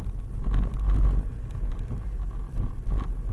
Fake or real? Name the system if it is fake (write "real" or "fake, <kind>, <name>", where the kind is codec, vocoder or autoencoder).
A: real